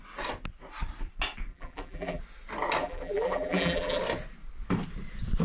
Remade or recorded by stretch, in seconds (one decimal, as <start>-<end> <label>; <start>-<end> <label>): 0.0-1.5 recorded; 1.5-2.2 remade; 2.2-2.8 recorded; 2.8-4.0 remade; 4.0-5.4 recorded